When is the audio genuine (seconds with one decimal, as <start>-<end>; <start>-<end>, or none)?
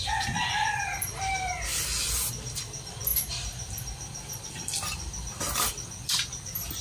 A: 1.7-2.3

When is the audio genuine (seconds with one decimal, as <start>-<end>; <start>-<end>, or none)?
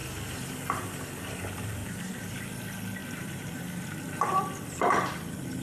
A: 0.0-1.8; 2.3-3.0; 3.6-5.6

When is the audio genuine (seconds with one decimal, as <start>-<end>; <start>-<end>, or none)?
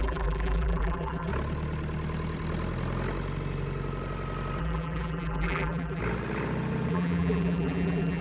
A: 1.3-4.6; 6.0-6.9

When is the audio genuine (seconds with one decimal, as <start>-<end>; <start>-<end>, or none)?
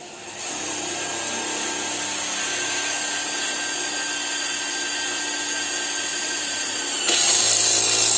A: 0.0-6.1; 6.8-8.2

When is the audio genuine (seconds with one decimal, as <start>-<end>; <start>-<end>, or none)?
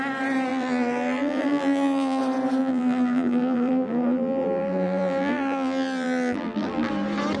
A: 0.0-0.5; 2.2-2.6; 6.9-7.4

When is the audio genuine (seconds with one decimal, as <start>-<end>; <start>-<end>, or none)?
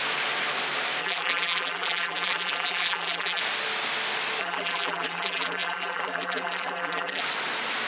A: 0.0-1.0; 3.4-4.4; 7.2-7.9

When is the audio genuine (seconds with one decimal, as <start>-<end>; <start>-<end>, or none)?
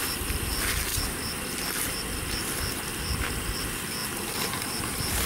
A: 0.0-0.9; 2.0-4.0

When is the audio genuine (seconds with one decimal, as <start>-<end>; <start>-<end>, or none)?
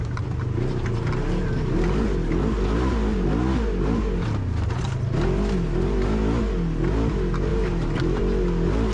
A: 0.0-8.9